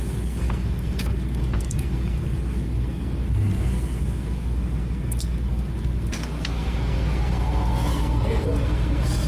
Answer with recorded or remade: remade